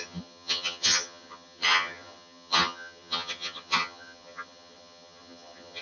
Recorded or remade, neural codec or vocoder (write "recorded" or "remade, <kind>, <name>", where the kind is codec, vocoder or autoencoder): remade, vocoder, HiFi-GAN